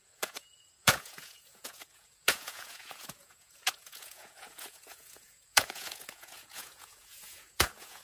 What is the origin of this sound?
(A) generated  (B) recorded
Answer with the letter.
A